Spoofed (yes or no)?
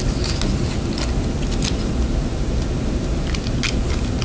no